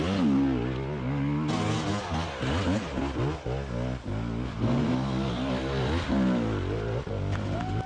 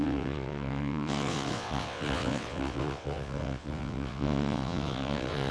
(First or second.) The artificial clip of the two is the second